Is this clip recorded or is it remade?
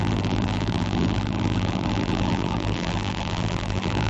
remade